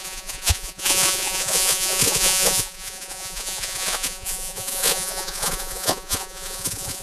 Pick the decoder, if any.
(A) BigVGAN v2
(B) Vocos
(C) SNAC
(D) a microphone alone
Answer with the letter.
B